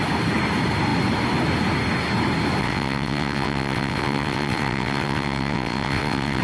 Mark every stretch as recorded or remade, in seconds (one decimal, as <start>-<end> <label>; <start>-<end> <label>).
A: 0.0-2.6 recorded; 2.6-6.4 remade